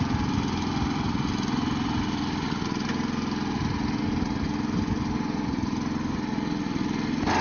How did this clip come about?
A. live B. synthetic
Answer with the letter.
A